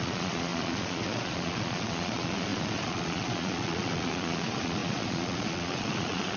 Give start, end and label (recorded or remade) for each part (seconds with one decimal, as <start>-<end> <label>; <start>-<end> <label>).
0.0-6.4 remade